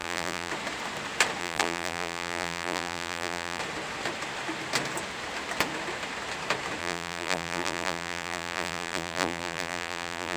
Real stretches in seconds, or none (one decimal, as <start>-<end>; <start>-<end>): 0.5-1.4; 3.6-6.8